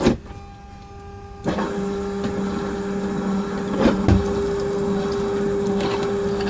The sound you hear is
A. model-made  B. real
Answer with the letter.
B